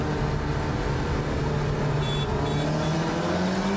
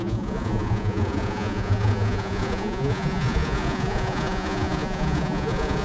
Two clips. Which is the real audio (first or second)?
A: first